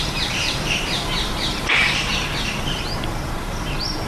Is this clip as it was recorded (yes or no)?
no